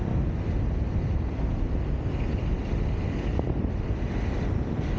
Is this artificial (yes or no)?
no